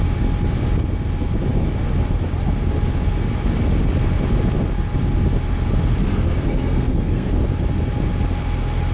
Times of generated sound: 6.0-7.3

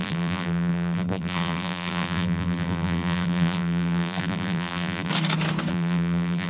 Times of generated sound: 0.0-5.1; 5.7-6.5